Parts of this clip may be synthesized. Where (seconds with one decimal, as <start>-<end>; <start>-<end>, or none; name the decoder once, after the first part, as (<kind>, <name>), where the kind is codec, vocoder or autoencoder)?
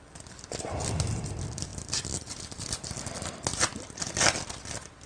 1.7-3.3 (vocoder, BigVGAN v2)